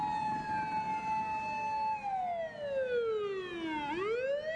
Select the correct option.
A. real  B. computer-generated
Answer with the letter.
A